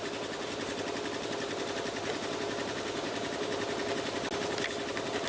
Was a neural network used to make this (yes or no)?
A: no